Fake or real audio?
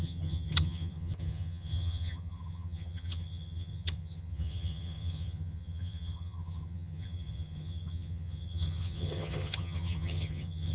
fake